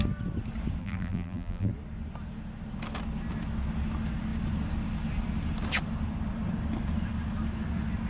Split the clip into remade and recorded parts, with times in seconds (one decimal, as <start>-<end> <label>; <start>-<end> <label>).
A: 0.0-0.8 recorded; 0.8-1.7 remade; 1.7-8.1 recorded